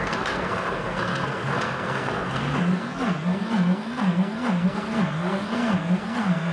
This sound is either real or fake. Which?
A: fake